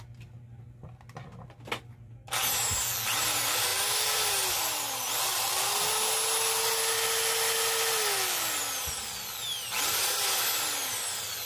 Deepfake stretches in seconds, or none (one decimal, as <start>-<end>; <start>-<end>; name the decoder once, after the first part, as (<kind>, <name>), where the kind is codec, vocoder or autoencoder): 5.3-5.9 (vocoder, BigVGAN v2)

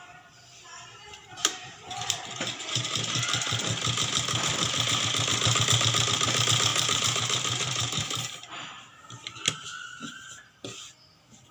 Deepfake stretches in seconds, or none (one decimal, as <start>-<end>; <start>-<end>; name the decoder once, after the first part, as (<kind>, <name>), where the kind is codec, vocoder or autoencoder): 0.9-3.2 (vocoder, BigVGAN v2); 6.7-9.0

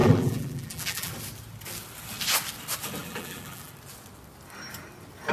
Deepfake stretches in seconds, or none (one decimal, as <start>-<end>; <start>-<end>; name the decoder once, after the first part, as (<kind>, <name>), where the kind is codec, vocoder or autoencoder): 0.0-1.1 (vocoder, BigVGAN v2); 3.0-3.7

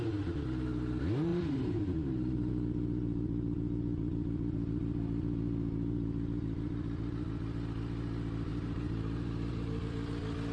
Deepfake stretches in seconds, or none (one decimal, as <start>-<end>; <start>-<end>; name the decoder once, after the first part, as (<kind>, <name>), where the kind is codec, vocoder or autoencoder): 1.3-2.5 (vocoder, BigVGAN v2); 8.5-9.9

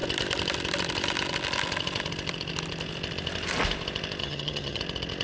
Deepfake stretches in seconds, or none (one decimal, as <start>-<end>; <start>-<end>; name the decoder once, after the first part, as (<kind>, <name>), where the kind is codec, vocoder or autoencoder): 4.2-4.8 (vocoder, HiFi-GAN)